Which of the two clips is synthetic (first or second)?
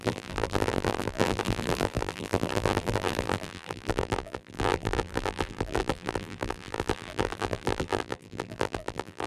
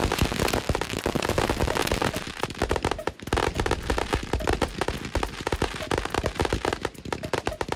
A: first